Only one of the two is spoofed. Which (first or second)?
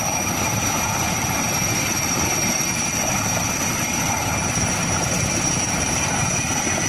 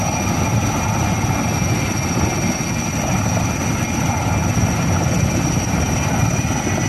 first